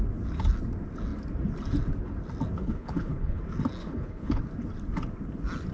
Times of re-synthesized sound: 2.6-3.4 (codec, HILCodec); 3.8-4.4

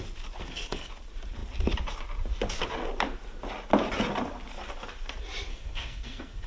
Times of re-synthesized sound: 0.4-0.9 (codec, SNAC); 5.5-6.5

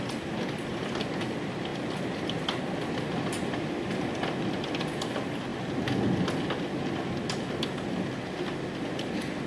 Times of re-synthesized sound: none